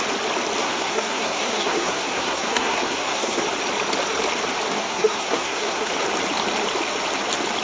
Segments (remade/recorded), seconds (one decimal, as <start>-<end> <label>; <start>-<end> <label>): 0.0-0.6 recorded; 0.6-3.4 remade; 3.4-4.8 recorded; 4.8-5.9 remade; 5.9-7.6 recorded